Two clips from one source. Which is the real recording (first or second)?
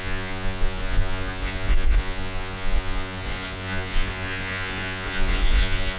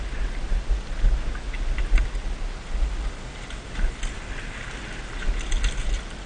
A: second